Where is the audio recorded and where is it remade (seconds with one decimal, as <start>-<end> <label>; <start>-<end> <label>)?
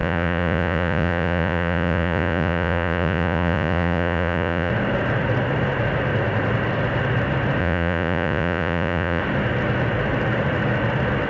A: 0.0-4.7 remade; 4.7-7.6 recorded; 7.6-9.2 remade; 9.2-11.3 recorded